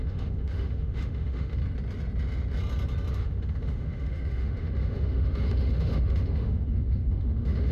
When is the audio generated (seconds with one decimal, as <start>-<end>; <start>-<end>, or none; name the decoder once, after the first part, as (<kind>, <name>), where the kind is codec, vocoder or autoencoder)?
0.0-1.6 (autoencoder, DAC-VAE); 3.1-7.7